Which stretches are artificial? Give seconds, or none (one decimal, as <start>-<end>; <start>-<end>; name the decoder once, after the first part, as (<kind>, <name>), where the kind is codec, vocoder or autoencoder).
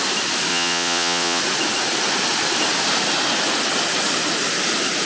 0.5-1.4 (vocoder, WaveNeXt)